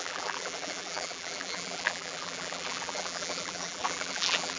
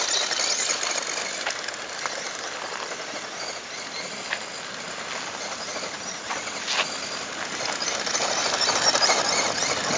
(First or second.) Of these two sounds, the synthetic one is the first